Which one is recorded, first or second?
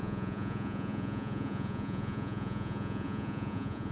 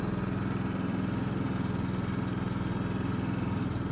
second